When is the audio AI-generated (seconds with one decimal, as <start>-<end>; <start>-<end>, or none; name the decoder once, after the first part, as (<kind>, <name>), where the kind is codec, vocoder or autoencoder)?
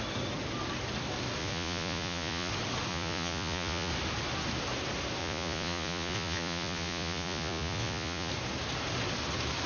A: 1.4-2.5 (vocoder, Vocos); 2.9-3.9; 5.2-8.3